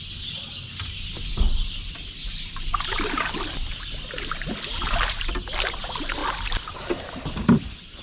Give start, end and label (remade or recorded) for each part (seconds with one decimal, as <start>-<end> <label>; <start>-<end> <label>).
0.0-6.2 recorded; 6.2-8.0 remade